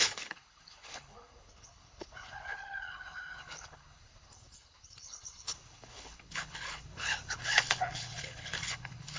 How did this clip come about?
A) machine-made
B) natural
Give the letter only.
A